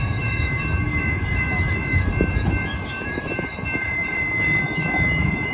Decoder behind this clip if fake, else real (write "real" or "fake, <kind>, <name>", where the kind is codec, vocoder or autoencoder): fake, autoencoder, DAC-VAE